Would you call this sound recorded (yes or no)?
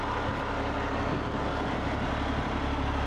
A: no